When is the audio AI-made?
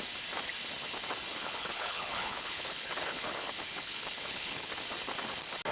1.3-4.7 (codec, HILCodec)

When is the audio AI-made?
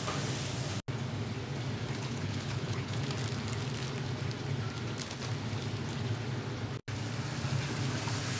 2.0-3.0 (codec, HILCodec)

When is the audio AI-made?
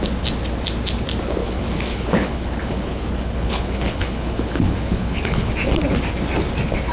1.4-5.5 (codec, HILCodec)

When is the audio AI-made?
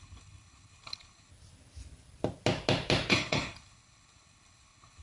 0.0-1.3 (codec, HILCodec); 3.1-5.0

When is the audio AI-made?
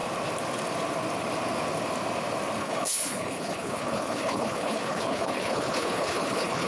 2.6-6.7 (codec, HILCodec)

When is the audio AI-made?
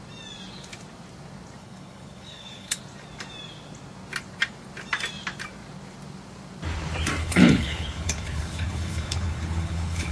1.6-2.8 (codec, HILCodec); 7.2-10.1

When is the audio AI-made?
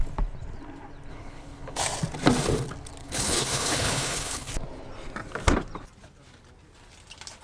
1.1-1.8 (codec, HILCodec); 3.0-4.5